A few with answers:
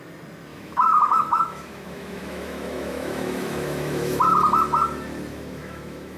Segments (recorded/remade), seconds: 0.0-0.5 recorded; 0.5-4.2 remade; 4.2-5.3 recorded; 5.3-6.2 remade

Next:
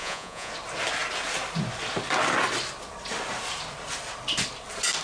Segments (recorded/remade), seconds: 0.0-0.5 remade; 0.5-5.0 recorded

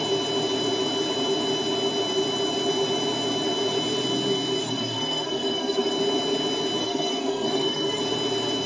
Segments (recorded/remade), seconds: 0.0-4.6 recorded; 4.6-5.9 remade; 5.9-6.8 recorded; 6.8-8.0 remade; 8.0-8.7 recorded

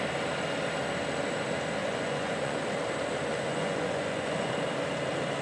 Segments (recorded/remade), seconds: 0.0-1.8 recorded; 1.8-2.6 remade; 2.6-3.3 recorded; 3.3-4.5 remade; 4.5-5.4 recorded

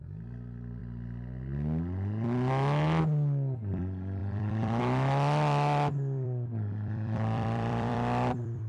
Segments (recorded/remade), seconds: 0.0-0.8 remade; 0.8-3.0 recorded; 3.0-8.7 remade

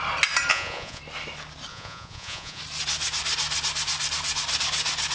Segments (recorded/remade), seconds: 0.0-0.5 recorded; 0.5-1.0 remade; 1.0-1.7 recorded; 1.7-2.6 remade; 2.6-5.1 recorded

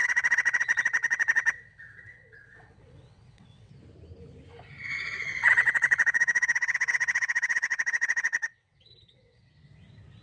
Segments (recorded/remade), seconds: 0.0-3.7 remade; 3.7-5.4 recorded; 5.4-9.5 remade; 9.5-10.2 recorded